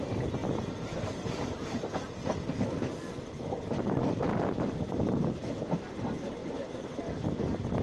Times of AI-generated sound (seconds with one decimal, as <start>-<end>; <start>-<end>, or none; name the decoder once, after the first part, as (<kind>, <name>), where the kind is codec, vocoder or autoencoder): 0.4-1.8 (vocoder, BigVGAN v2); 4.3-5.0; 6.4-7.0